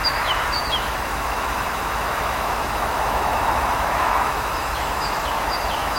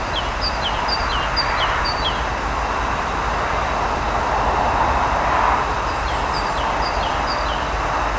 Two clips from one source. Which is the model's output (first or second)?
first